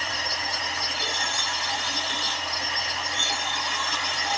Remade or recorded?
recorded